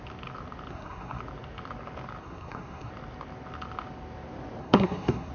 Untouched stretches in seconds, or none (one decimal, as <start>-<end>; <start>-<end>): 0.0-0.7; 1.2-2.2; 2.9-4.6